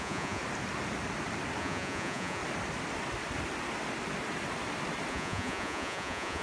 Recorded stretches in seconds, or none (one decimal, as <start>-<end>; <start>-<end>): 0.4-1.6; 2.4-5.1